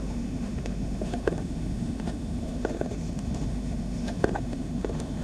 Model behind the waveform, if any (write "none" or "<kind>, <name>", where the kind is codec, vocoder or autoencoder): autoencoder, DAC-VAE